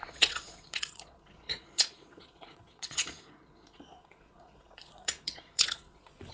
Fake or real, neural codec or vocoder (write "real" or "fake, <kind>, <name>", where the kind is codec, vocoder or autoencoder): fake, vocoder, Vocos